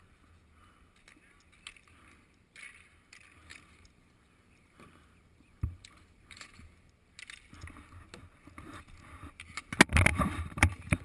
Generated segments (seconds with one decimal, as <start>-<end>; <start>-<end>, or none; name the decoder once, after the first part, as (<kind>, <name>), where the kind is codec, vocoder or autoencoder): 3.5-6.9 (vocoder, BigVGAN v2); 10.1-11.0